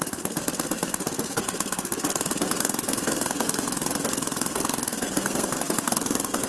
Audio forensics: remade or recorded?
remade